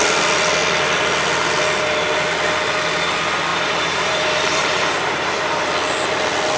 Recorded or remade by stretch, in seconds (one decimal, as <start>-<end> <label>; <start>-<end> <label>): 0.0-3.5 recorded; 3.5-5.7 remade; 5.7-6.6 recorded